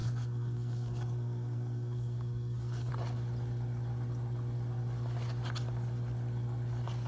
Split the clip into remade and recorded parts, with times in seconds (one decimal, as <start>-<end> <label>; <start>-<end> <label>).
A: 0.0-2.9 remade; 2.9-7.1 recorded